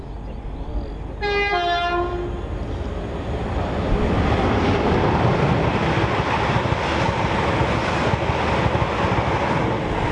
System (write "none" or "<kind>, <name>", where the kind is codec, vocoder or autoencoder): none